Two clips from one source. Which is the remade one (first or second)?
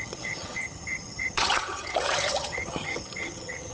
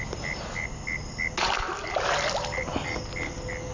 first